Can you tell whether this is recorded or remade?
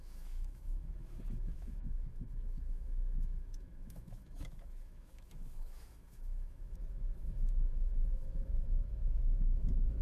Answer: remade